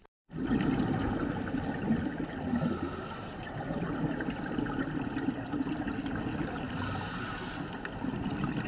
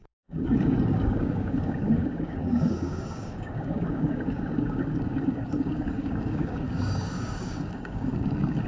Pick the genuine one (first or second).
first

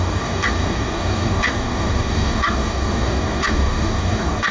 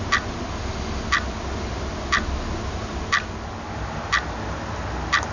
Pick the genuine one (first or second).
second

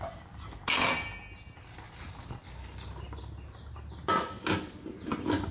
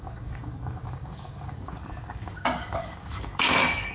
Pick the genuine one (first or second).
first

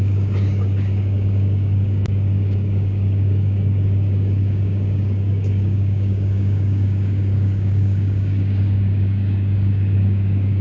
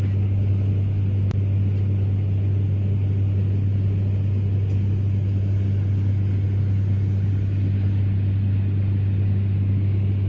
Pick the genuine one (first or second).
second